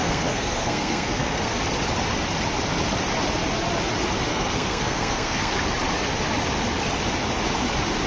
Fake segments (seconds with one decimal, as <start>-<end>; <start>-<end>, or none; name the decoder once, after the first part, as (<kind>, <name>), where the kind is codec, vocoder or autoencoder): 0.0-1.6 (codec, SNAC); 4.3-5.5